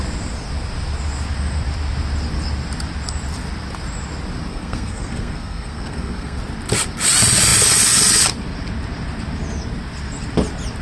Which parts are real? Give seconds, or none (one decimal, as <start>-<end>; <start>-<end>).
0.0-4.5; 6.4-10.8